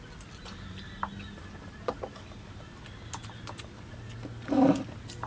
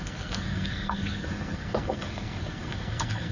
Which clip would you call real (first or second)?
first